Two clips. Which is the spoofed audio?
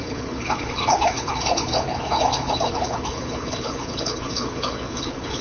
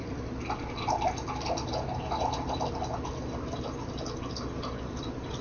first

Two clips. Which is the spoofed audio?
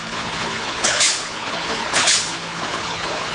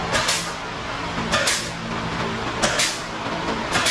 first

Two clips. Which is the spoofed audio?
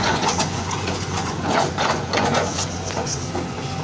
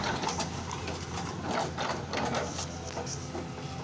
first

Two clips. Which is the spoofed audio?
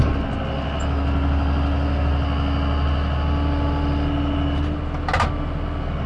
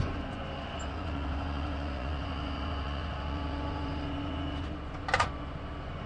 second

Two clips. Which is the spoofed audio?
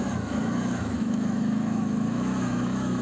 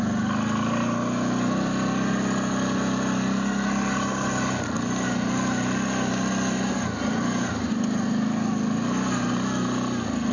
first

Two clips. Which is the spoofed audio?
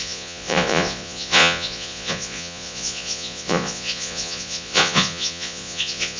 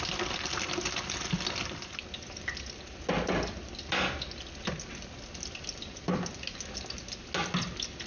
first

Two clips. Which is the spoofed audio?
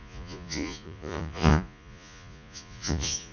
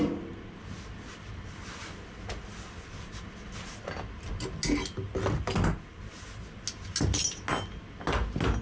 first